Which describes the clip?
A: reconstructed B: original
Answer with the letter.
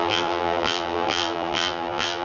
A